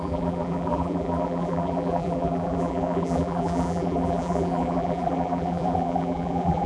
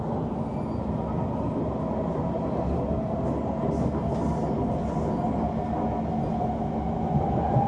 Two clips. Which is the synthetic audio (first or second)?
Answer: first